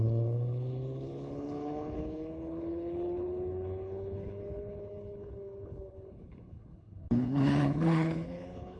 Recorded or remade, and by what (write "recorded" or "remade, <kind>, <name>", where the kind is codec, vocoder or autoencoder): remade, codec, HILCodec